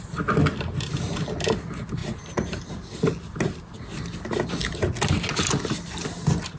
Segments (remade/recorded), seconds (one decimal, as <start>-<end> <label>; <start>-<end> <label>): 0.0-2.0 recorded; 2.0-2.7 remade; 2.7-6.6 recorded